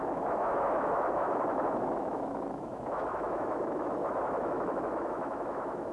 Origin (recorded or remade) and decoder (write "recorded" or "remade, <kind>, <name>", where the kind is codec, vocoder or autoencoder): remade, autoencoder, DAC-VAE